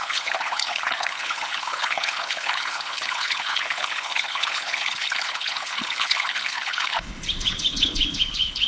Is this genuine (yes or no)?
no